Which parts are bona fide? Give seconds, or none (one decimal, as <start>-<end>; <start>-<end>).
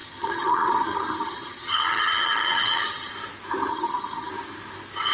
3.1-3.7; 4.3-5.1